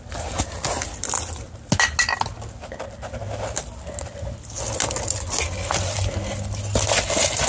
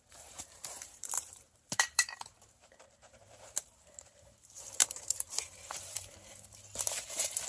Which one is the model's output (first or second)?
second